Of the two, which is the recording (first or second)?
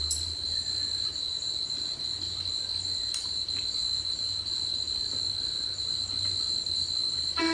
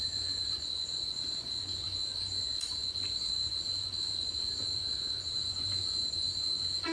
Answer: first